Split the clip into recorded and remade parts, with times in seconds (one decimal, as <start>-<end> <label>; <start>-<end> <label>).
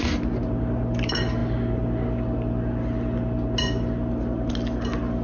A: 0.0-5.2 recorded